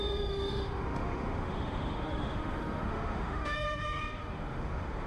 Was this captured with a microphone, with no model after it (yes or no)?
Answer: no